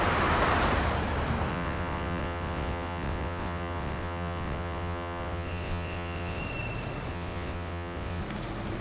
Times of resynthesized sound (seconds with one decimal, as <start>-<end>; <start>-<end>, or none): 1.5-6.4; 7.1-8.2